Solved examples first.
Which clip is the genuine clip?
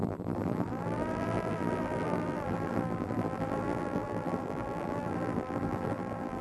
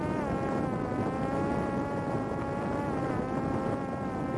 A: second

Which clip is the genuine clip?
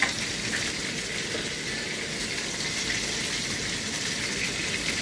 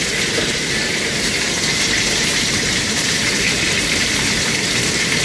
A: first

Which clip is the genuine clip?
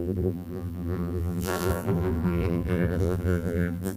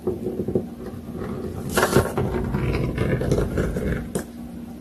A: second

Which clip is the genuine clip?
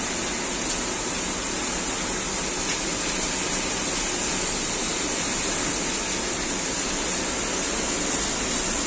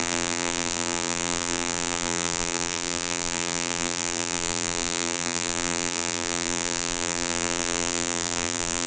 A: first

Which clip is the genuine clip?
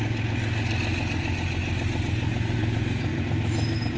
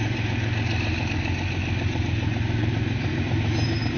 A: first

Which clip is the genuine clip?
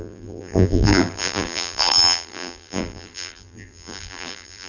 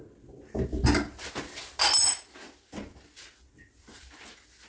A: second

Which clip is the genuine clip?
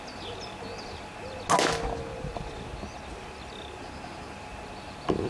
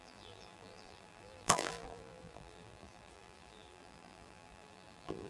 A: first